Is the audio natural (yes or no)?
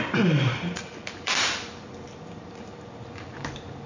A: no